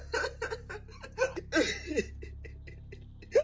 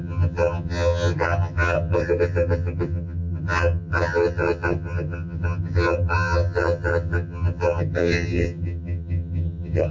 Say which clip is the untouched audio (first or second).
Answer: first